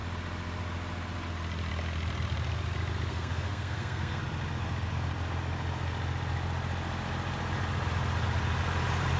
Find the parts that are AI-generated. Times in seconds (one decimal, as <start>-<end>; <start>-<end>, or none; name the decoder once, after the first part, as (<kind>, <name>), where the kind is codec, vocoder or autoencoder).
3.1-4.2 (codec, SNAC)